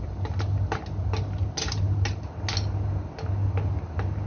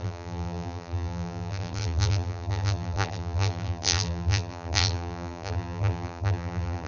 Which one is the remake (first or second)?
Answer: second